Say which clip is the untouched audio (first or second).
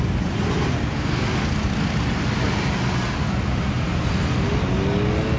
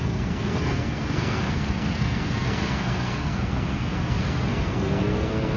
first